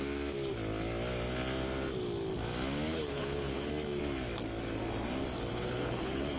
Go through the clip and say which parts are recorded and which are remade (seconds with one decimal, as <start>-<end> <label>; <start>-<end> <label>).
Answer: 0.0-2.9 recorded; 2.9-3.7 remade; 3.7-5.5 recorded; 5.5-6.4 remade